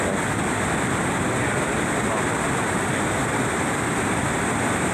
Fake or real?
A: real